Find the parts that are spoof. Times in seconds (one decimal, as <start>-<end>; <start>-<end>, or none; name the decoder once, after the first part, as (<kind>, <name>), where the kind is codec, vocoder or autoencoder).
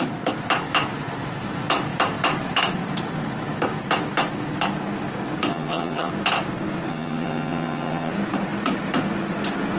5.5-6.1 (vocoder, HiFi-GAN); 6.9-8.1